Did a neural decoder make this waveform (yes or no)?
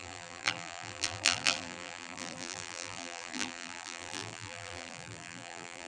yes